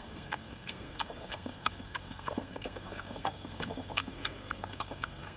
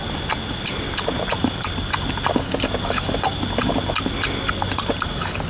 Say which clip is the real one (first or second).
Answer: second